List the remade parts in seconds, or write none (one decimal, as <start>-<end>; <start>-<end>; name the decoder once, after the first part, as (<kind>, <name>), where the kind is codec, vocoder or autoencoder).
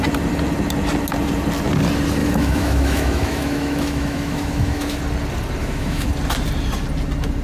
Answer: 2.2-5.0 (autoencoder, DAC-VAE); 5.6-6.1